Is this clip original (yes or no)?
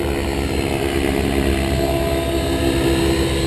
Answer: yes